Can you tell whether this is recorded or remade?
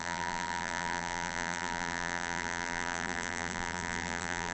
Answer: remade